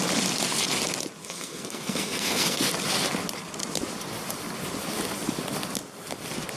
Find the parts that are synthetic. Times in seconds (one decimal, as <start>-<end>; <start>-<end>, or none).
1.2-2.7

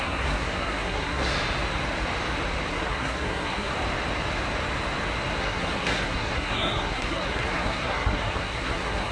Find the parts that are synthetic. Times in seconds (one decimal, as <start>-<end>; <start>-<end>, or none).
0.0-1.3; 2.7-3.7; 5.4-9.1

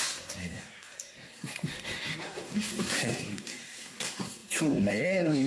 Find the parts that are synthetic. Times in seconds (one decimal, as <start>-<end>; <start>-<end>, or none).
0.0-5.5

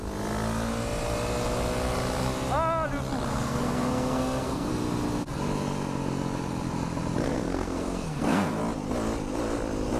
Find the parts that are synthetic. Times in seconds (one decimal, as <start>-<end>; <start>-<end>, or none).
3.3-4.7; 7.2-8.6

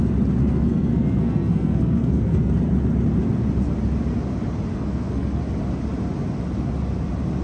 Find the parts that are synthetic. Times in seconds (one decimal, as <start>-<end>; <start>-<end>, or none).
0.4-2.5; 4.7-5.4